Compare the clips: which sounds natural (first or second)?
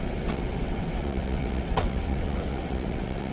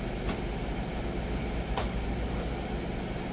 second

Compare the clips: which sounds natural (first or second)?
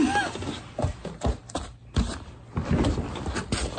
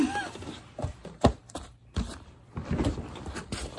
first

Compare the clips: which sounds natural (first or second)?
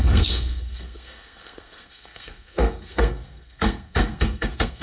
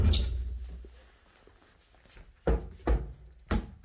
second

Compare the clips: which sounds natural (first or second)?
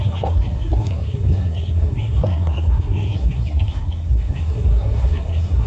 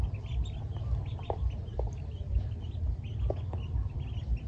second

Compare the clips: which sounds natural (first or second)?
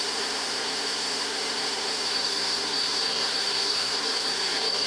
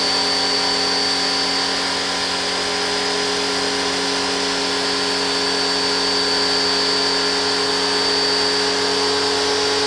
second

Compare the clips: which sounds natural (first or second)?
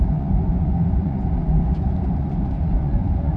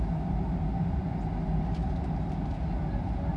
second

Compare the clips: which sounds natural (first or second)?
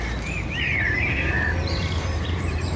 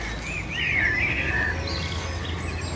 second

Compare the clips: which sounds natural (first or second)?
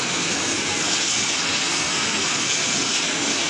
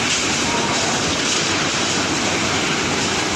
second